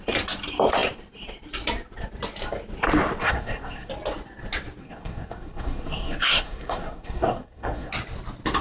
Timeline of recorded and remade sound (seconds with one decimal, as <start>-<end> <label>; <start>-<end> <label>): 0.0-3.2 recorded; 3.2-3.9 remade; 3.9-4.8 recorded; 4.8-7.9 remade; 7.9-8.6 recorded